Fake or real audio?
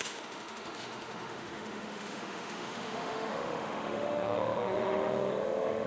fake